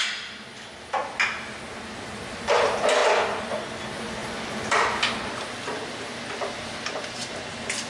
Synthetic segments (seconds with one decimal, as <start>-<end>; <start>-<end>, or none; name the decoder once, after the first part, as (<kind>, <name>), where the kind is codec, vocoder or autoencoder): none